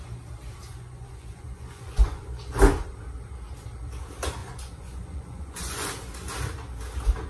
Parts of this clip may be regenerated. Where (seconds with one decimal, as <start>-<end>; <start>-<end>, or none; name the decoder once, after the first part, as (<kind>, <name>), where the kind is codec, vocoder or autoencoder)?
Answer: 0.7-2.5 (vocoder, Vocos); 4.4-5.9